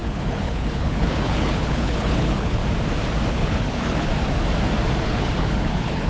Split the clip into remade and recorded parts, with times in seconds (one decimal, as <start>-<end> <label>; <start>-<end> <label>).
0.0-2.6 remade; 2.6-3.3 recorded; 3.3-4.1 remade; 4.1-5.0 recorded; 5.0-6.1 remade